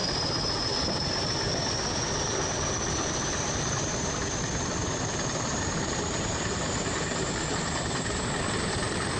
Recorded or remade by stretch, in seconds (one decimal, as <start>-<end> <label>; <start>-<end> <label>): 0.0-3.4 recorded; 3.4-4.2 remade; 4.2-5.1 recorded; 5.1-9.2 remade